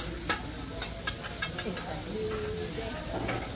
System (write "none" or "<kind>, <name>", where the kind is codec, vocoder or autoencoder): none